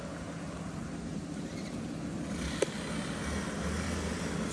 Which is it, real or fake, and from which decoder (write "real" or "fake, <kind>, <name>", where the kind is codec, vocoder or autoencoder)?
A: real